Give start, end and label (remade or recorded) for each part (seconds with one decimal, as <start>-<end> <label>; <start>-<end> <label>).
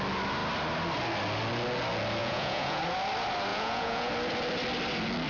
0.0-2.2 recorded; 2.2-2.8 remade; 2.8-3.5 recorded; 3.5-4.1 remade; 4.1-5.3 recorded